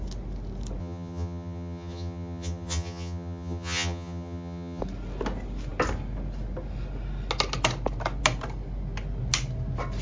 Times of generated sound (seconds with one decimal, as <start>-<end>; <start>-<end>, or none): 0.8-4.8